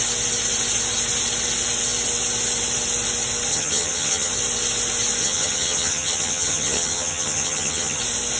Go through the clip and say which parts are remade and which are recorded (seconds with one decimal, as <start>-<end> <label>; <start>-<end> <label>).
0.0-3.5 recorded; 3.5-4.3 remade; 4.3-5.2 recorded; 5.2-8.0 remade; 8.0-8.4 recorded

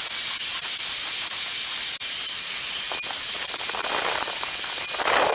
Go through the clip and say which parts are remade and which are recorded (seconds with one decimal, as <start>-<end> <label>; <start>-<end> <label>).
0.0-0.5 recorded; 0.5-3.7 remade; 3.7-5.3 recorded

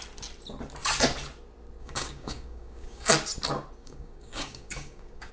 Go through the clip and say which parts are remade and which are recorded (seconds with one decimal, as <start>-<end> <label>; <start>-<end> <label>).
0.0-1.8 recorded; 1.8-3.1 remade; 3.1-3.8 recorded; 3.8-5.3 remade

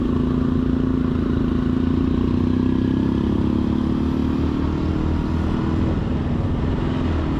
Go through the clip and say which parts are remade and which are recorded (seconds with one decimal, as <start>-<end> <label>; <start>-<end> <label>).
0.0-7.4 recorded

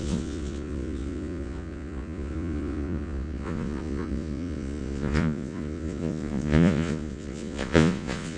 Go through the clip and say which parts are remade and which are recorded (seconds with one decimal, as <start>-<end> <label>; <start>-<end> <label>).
0.0-8.4 remade

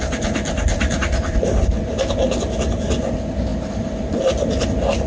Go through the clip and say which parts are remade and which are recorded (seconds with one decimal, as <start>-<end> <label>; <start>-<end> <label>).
0.0-5.1 recorded